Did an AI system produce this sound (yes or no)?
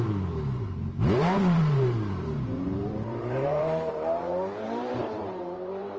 yes